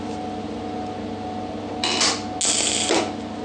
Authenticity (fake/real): real